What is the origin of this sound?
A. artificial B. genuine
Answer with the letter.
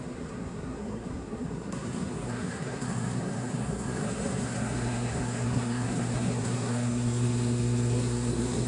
A